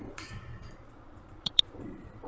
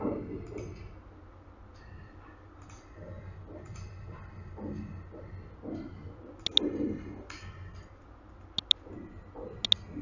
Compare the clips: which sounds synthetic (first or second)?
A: first